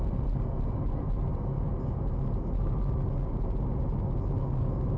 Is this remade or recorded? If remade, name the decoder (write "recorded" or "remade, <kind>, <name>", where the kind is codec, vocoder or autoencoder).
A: recorded